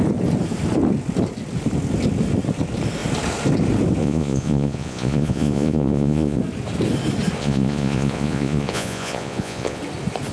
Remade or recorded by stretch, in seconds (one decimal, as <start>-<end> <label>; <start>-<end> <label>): 0.0-4.0 recorded; 4.0-6.4 remade; 6.4-7.4 recorded; 7.4-9.8 remade; 9.8-10.3 recorded